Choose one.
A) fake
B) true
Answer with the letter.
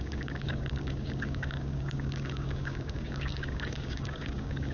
A